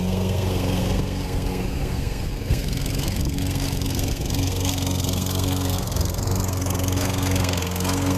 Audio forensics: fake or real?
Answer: fake